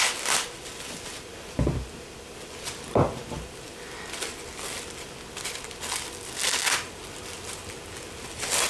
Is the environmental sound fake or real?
real